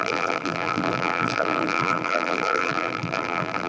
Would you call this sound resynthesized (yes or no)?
yes